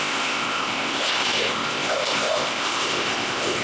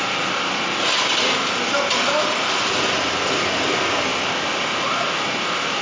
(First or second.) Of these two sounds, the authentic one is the second